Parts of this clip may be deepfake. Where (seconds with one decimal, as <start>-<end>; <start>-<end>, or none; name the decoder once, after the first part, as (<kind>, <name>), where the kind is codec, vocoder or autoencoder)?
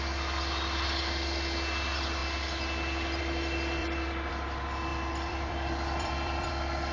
3.8-4.3 (vocoder, BigVGAN v2); 4.9-6.5